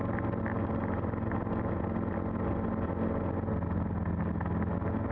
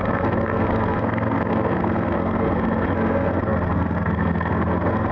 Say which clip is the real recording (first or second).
first